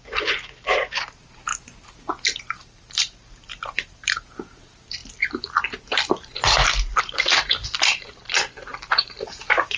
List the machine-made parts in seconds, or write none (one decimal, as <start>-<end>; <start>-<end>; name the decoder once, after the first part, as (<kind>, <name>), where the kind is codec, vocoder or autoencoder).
0.0-1.5 (vocoder, BigVGAN v2); 2.4-5.0; 7.0-8.2; 8.9-9.8